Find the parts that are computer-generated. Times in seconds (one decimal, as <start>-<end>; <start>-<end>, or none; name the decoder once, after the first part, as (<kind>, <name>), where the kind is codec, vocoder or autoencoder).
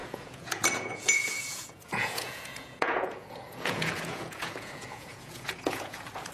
0.0-6.3 (vocoder, Vocos)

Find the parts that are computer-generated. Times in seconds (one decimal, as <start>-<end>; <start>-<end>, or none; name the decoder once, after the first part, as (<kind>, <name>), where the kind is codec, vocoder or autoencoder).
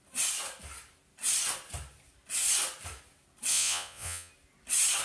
3.5-4.3 (vocoder, Vocos)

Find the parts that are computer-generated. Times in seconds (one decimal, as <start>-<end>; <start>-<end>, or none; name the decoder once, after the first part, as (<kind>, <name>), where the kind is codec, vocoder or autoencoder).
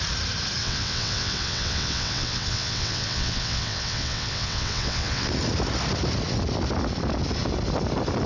0.6-5.3 (vocoder, WaveNeXt)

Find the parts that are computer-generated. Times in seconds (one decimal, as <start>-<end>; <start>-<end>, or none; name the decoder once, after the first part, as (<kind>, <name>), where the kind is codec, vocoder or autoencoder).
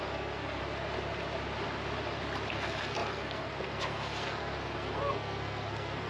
0.0-0.6 (codec, SNAC); 2.5-6.1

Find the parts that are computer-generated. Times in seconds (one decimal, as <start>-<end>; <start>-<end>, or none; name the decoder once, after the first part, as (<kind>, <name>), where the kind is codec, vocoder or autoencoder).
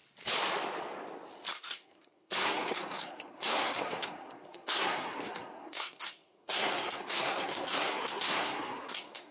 1.5-9.3 (codec, SNAC)